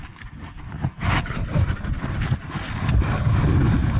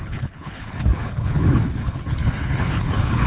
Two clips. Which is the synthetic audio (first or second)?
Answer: second